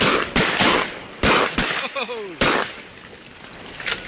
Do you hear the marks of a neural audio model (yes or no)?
no